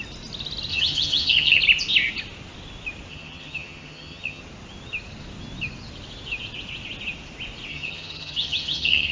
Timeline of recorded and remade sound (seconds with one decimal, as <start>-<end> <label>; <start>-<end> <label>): 0.0-0.7 recorded; 0.7-1.6 remade; 1.6-3.1 recorded; 3.1-4.4 remade; 4.4-7.7 recorded; 7.7-9.1 remade